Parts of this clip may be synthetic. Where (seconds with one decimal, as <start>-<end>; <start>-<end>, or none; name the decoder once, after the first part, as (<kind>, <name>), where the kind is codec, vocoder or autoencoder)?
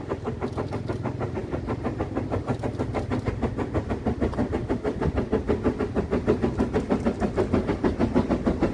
none